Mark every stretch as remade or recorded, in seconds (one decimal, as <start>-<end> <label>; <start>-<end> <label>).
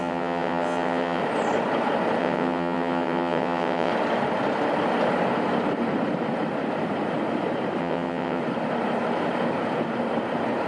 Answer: 0.0-1.2 remade; 1.2-2.2 recorded; 2.2-3.9 remade; 3.9-7.8 recorded; 7.8-8.4 remade; 8.4-10.7 recorded